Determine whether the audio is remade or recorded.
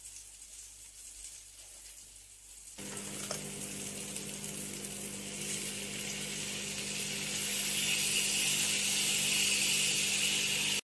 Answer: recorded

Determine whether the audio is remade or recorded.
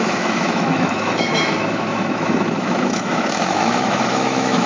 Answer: remade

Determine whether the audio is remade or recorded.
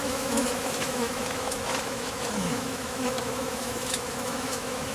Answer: remade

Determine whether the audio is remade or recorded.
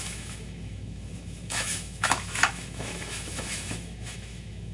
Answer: remade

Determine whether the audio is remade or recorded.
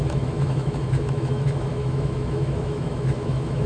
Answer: remade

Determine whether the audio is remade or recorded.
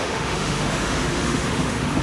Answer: remade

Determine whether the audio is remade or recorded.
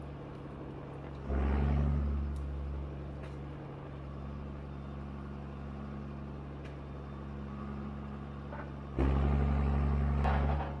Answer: recorded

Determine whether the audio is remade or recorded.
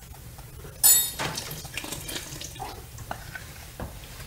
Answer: recorded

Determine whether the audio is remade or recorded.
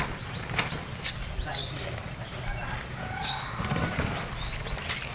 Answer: recorded